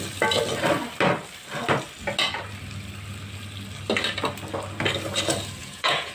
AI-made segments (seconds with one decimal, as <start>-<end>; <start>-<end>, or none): 5.6-6.1